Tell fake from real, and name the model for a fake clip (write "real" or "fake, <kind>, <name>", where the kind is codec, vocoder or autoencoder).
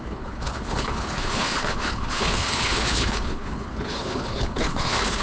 fake, codec, HILCodec